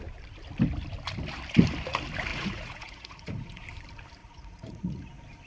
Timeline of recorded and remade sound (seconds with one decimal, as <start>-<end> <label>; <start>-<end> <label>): 0.0-2.3 recorded; 2.3-3.6 remade; 3.6-4.2 recorded; 4.2-5.1 remade; 5.1-5.5 recorded